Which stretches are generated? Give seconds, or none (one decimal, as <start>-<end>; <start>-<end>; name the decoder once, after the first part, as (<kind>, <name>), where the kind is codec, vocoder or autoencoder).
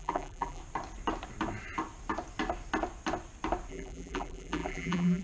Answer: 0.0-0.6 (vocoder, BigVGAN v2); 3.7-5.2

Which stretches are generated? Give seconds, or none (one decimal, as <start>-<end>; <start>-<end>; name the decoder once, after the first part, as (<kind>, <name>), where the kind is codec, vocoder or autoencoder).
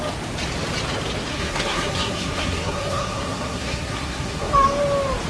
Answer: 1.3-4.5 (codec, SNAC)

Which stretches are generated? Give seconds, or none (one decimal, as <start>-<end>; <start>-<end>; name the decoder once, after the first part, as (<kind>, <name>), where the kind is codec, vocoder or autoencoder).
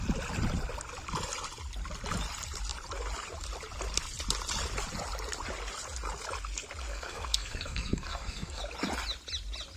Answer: 6.9-8.6 (codec, SNAC)